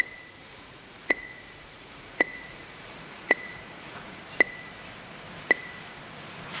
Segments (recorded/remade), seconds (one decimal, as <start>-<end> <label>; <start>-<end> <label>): 0.0-0.4 recorded; 0.4-4.2 remade; 4.2-6.6 recorded